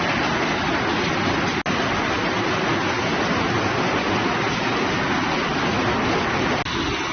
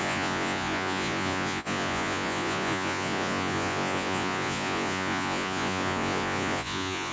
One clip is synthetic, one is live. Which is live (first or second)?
first